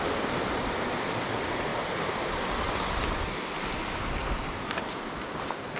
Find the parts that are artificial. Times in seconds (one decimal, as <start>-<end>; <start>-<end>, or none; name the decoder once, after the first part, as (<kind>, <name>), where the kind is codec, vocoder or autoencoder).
none